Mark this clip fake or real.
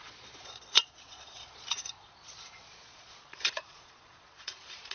fake